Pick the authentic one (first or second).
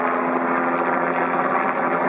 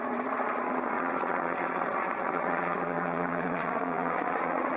first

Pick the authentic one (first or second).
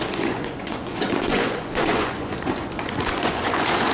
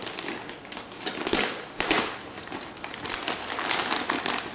second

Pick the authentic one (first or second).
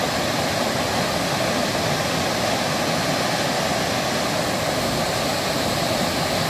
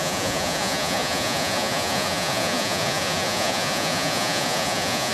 first